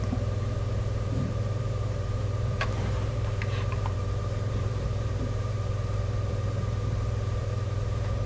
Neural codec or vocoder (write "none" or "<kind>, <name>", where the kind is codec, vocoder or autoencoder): vocoder, BigVGAN v2